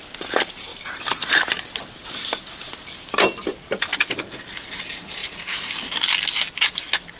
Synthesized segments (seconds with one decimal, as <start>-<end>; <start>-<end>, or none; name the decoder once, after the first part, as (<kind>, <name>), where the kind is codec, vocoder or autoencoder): none